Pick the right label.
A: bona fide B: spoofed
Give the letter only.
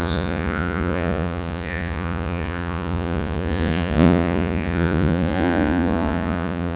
B